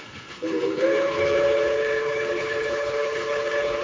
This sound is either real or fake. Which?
fake